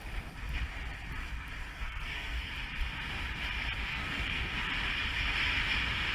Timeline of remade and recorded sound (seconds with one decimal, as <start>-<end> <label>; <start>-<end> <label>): 0.0-1.7 recorded; 1.7-2.5 remade; 2.5-3.8 recorded; 3.8-4.6 remade; 4.6-6.1 recorded